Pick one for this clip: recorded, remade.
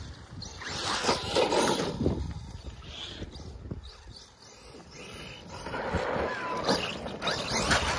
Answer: recorded